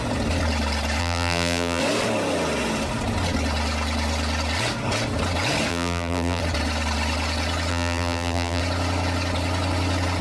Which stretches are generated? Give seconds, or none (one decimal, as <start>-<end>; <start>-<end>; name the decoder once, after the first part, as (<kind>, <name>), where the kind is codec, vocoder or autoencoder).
1.0-1.8 (vocoder, BigVGAN v2); 5.7-6.4; 7.7-8.6